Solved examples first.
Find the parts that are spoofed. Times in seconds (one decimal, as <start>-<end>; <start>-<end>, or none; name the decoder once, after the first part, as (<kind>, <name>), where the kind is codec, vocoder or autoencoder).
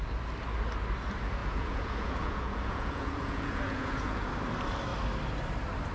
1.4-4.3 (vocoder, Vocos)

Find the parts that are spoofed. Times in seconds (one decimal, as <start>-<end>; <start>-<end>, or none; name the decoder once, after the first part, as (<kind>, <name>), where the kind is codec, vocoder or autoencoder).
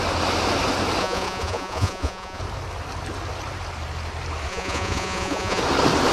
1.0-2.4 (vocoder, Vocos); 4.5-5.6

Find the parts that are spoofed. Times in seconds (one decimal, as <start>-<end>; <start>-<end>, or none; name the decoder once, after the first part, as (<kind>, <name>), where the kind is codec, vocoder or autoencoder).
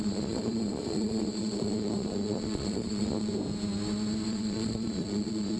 0.0-3.3 (vocoder, Vocos); 4.3-5.6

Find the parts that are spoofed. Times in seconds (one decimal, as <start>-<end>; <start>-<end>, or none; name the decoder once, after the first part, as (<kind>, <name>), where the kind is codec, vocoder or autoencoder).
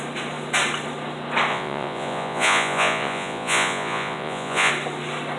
1.5-4.7 (vocoder, Vocos)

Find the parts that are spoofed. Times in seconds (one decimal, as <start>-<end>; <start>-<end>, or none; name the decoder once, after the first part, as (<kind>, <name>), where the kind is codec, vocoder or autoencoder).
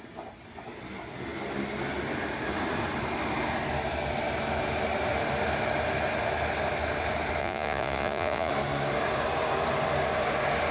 7.4-8.5 (vocoder, Vocos)